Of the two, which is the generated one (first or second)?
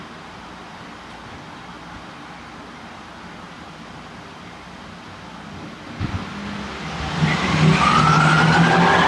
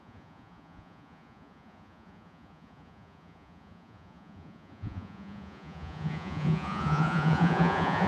second